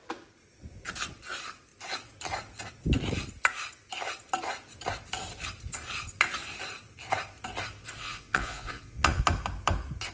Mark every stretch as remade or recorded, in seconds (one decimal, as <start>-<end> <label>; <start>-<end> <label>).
0.0-8.0 recorded; 8.0-9.2 remade; 9.2-10.1 recorded